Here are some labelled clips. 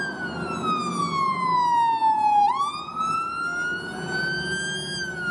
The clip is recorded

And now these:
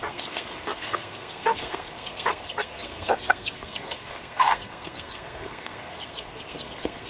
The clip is remade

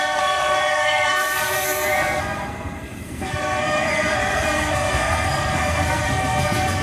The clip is remade